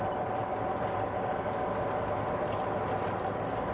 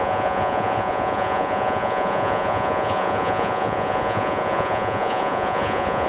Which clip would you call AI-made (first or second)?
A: second